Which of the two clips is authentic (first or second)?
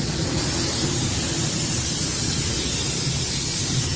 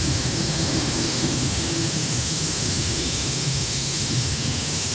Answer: first